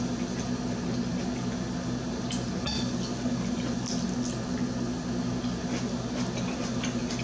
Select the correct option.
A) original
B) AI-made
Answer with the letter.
A